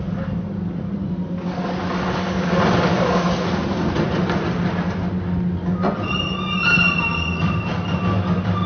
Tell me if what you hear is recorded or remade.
recorded